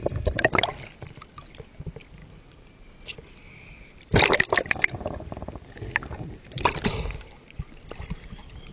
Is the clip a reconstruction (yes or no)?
no